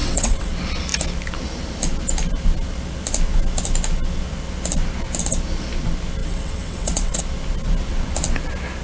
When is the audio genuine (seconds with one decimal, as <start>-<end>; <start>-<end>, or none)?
0.5-6.2; 7.2-8.8

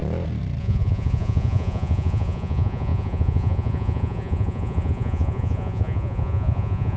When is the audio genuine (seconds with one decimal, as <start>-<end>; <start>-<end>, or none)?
0.0-0.6

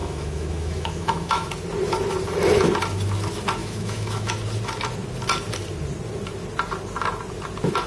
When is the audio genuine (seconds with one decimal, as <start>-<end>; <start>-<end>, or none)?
1.5-3.6; 4.3-7.9

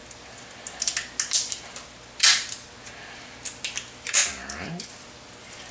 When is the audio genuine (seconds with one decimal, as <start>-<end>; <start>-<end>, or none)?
0.0-5.7

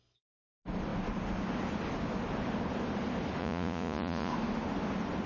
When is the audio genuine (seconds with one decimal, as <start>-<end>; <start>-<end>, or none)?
0.0-3.4; 4.3-5.3

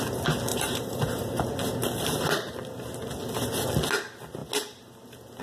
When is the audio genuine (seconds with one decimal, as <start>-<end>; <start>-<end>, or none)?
0.0-0.5; 1.4-5.4

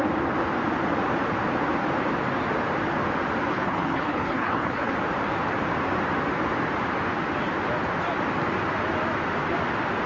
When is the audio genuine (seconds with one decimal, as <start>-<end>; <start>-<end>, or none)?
0.0-3.5; 4.9-10.1